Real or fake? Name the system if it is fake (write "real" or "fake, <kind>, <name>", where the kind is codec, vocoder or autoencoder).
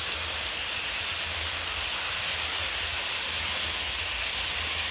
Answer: real